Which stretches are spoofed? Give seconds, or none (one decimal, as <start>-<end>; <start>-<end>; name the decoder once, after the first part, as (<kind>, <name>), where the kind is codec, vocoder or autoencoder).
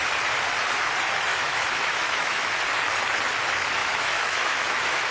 1.3-2.5 (autoencoder, DAC-VAE); 3.8-5.1